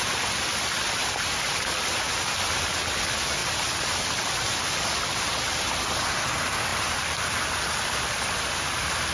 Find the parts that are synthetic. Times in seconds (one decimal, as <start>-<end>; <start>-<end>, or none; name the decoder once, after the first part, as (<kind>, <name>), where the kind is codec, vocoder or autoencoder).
6.7-8.4 (vocoder, BigVGAN v2)